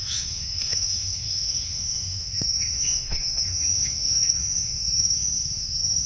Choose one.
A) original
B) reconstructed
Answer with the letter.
B